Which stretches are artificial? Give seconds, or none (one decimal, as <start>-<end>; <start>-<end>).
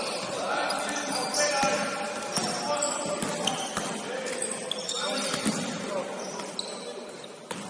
none